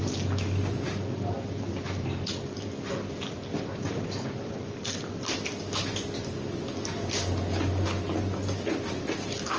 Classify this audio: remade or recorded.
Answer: recorded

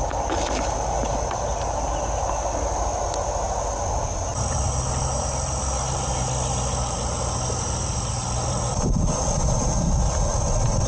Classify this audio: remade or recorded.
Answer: recorded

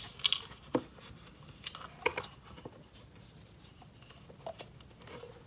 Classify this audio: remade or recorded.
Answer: recorded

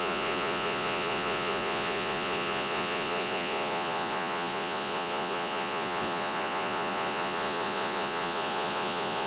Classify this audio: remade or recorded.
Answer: remade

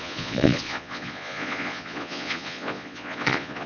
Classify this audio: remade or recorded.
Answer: remade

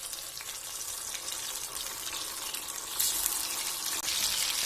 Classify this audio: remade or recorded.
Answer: recorded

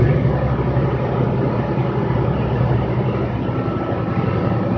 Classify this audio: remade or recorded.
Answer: recorded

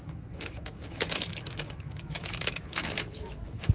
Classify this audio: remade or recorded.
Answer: remade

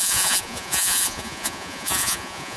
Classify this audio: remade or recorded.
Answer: remade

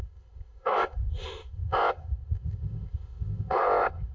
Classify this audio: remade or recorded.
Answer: remade